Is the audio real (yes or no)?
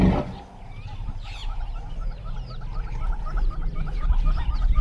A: yes